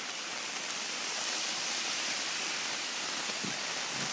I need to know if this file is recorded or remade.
remade